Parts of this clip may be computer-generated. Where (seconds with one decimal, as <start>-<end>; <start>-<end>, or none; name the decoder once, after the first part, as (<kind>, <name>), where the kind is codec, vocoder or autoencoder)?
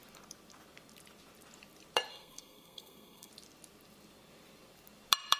2.1-3.3 (codec, SNAC)